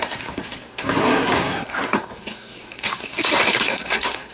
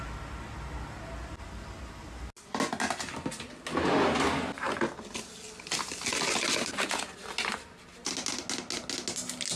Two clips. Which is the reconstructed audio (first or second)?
first